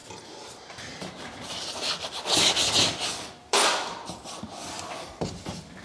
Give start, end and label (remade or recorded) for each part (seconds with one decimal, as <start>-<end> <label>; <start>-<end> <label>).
0.0-2.2 remade; 2.2-3.4 recorded; 3.4-4.2 remade; 4.2-5.8 recorded